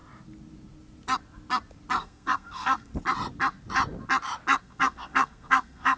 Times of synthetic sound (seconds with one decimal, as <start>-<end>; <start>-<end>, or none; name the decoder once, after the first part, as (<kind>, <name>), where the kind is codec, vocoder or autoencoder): 2.0-2.9 (codec, SNAC); 4.6-6.0